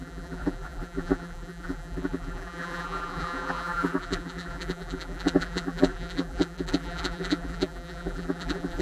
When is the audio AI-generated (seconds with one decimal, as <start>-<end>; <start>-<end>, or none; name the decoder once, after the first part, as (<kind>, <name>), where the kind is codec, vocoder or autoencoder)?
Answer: 0.0-8.8 (vocoder, BigVGAN v2)